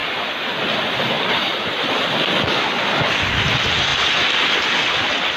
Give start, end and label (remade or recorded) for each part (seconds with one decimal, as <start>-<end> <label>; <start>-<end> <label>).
0.0-5.4 recorded